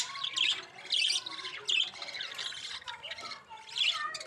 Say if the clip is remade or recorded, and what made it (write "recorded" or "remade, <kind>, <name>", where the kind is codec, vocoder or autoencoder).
recorded